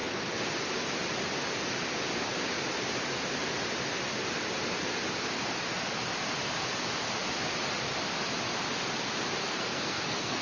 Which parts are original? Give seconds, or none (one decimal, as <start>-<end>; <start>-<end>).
0.0-9.4

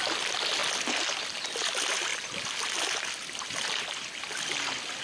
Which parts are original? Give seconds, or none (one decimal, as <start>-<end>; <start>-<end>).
0.0-5.0